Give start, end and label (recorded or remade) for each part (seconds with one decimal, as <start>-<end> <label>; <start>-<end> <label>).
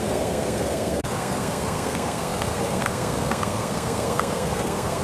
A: 0.0-5.0 remade